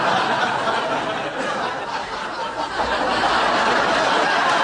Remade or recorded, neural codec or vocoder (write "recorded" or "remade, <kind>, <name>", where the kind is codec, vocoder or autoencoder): recorded